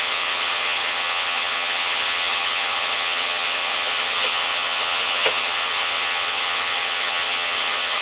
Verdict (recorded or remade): remade